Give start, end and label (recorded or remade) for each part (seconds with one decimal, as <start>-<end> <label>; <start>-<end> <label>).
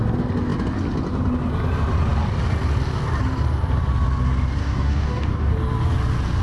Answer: 0.0-4.6 recorded; 4.6-5.5 remade; 5.5-6.4 recorded